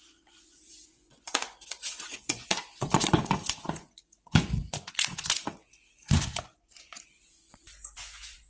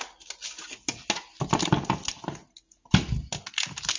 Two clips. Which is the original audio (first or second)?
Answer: second